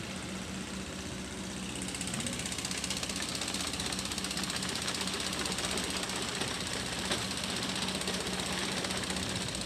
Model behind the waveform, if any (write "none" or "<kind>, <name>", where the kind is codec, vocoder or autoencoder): none